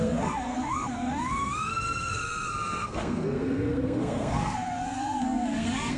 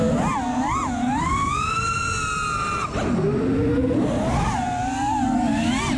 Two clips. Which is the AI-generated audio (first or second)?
first